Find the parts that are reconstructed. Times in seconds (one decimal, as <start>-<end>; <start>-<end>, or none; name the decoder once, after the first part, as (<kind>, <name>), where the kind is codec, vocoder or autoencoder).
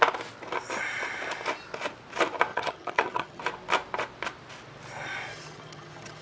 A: 2.5-3.4 (vocoder, HiFi-GAN); 5.3-6.2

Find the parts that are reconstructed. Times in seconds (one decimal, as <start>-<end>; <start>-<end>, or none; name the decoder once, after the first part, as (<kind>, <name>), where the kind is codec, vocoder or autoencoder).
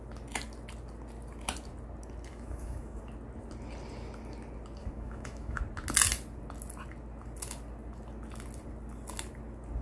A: 2.3-3.0 (autoencoder, DAC-VAE); 4.8-5.6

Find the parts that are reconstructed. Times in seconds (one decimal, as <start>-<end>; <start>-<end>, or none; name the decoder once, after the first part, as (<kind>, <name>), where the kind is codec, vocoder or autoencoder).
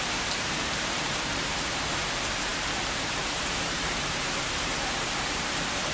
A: 0.0-5.9 (vocoder, BigVGAN v2)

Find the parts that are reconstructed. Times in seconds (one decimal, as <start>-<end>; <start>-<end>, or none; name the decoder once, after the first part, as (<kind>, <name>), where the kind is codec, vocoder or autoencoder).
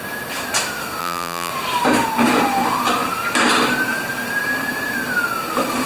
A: 1.0-1.5 (vocoder, BigVGAN v2)